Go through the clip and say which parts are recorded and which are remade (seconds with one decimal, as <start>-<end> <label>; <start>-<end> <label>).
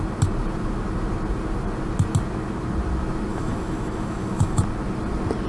0.0-3.3 recorded; 3.3-4.6 remade; 4.6-5.5 recorded